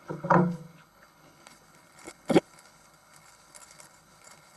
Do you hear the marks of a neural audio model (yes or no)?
yes